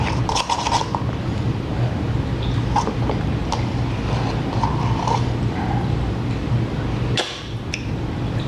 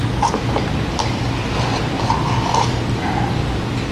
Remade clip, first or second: first